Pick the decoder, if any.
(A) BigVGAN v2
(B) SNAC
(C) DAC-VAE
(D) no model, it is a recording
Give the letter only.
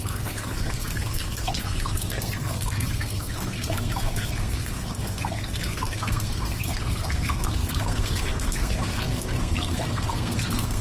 B